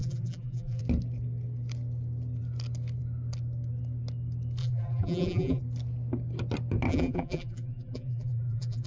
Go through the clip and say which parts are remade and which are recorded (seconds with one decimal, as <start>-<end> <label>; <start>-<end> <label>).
0.0-0.8 remade; 0.8-4.6 recorded; 4.6-5.6 remade; 5.6-6.9 recorded; 6.9-8.9 remade